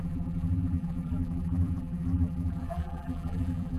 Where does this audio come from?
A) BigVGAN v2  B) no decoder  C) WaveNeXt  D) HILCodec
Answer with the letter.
A